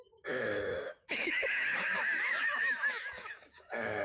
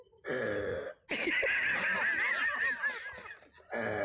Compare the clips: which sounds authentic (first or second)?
second